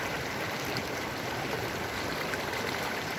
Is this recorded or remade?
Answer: recorded